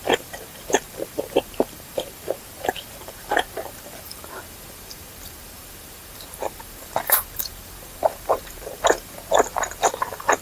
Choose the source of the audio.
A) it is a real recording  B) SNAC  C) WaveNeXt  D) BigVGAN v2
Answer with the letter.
D